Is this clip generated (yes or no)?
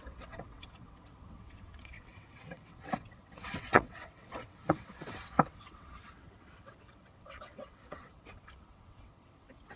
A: yes